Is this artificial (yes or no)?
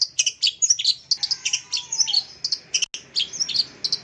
no